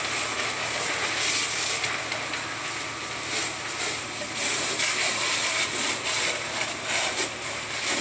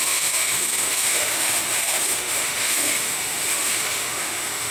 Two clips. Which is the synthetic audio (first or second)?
second